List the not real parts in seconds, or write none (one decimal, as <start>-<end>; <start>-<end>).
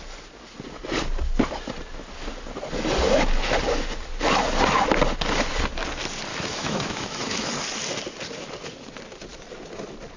6.3-7.5